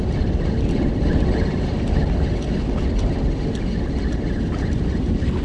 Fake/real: real